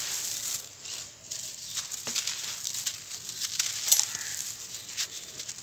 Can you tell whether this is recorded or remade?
recorded